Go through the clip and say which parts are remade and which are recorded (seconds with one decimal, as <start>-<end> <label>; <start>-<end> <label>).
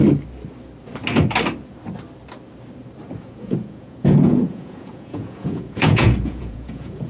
0.0-3.2 recorded; 3.2-7.1 remade